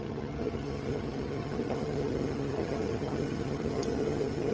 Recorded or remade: remade